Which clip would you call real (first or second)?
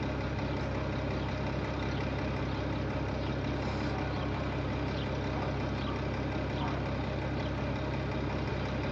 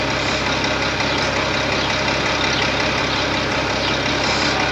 second